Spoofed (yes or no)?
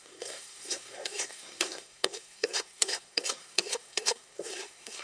yes